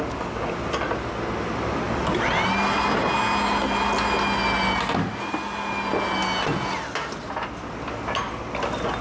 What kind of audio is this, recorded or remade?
recorded